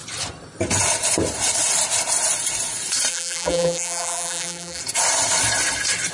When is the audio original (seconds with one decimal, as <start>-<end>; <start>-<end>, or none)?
0.0-3.1; 4.8-6.1